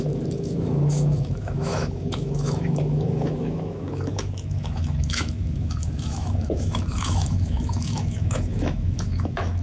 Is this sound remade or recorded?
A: remade